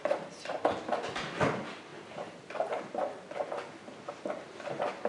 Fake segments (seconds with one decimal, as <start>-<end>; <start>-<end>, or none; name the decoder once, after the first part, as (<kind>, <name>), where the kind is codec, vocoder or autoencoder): none